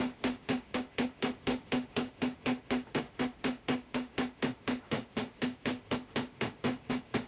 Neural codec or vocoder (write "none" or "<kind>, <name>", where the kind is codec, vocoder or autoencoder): autoencoder, DAC-VAE